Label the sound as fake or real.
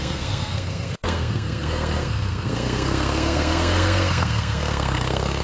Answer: fake